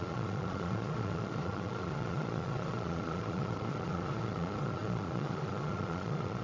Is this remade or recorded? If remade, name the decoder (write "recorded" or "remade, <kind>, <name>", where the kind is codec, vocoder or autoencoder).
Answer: remade, vocoder, Vocos